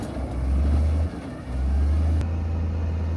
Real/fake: real